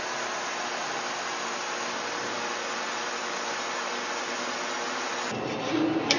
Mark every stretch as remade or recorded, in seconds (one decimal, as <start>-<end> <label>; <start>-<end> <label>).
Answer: 0.0-6.2 recorded